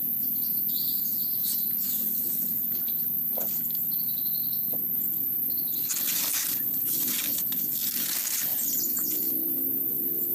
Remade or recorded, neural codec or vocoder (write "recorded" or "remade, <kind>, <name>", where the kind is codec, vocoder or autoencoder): recorded